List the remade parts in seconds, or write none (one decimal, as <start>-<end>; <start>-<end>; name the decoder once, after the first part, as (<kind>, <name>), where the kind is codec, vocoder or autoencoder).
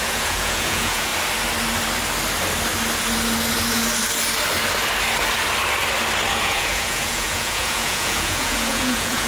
0.0-1.1 (vocoder, Vocos); 6.3-9.3